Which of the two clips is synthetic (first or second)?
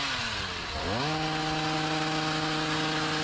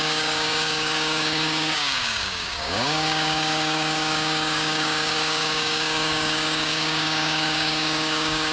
second